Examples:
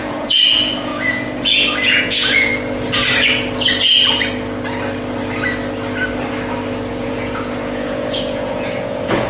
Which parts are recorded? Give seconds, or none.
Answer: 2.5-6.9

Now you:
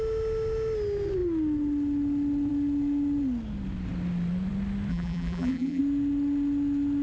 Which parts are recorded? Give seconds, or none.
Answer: 0.0-4.9; 5.8-7.0